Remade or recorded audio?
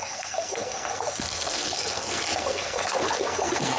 remade